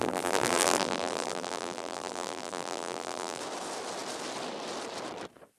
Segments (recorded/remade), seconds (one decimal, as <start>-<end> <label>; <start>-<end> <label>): 0.0-3.4 remade; 3.4-5.6 recorded